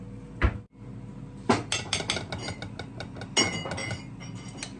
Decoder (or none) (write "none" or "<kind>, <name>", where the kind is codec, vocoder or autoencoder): none